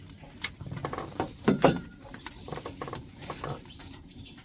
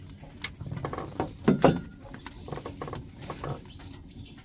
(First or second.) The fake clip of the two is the first